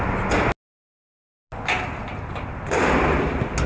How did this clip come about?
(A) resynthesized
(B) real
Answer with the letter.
B